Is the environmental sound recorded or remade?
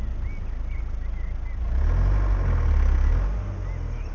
recorded